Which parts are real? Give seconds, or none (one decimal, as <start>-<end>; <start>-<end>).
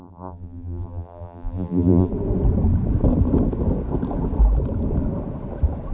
2.1-5.9